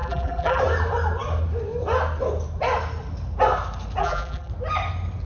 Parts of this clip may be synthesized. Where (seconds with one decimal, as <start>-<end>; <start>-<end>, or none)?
0.0-0.6; 4.0-4.5